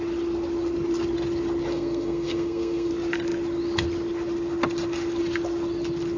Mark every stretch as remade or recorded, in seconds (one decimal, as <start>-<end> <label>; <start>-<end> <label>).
0.0-1.7 recorded; 1.7-2.9 remade; 2.9-6.2 recorded